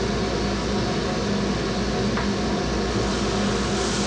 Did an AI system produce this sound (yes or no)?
no